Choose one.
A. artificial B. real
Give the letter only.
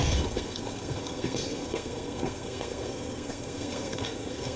A